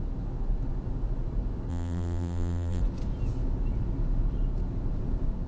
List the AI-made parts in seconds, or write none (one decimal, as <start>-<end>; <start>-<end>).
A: 1.7-2.8